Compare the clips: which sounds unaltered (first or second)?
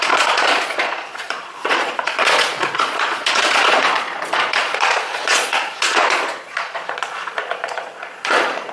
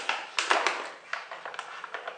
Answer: second